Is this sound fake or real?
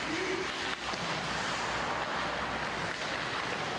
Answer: real